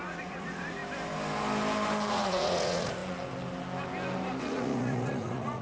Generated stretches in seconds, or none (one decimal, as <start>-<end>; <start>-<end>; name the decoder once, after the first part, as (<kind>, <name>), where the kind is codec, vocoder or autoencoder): 0.0-0.8 (vocoder, Vocos); 2.1-3.0; 4.4-5.6